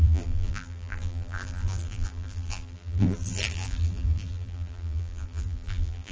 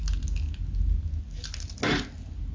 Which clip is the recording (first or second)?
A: second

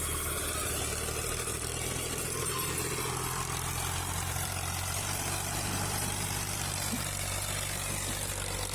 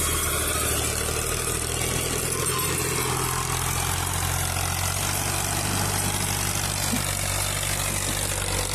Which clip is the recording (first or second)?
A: second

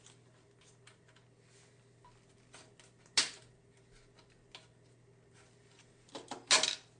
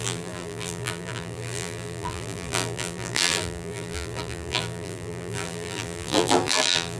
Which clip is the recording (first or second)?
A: first